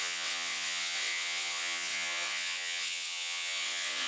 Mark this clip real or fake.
fake